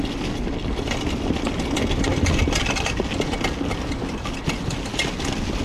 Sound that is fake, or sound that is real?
real